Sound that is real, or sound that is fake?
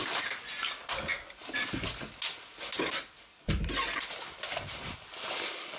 real